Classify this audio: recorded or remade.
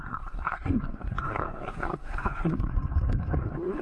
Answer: remade